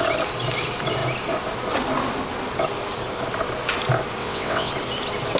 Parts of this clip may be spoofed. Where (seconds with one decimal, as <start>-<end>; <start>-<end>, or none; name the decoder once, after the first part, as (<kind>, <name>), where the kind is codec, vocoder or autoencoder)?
4.2-4.7 (vocoder, WaveNeXt)